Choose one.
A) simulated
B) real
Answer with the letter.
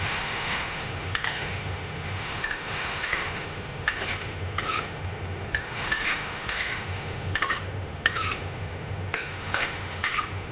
A